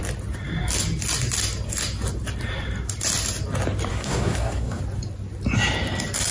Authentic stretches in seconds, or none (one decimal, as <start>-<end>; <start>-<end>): 0.0-3.9; 4.8-6.3